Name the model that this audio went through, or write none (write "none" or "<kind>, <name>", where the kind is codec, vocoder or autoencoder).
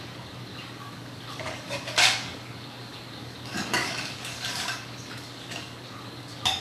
codec, DAC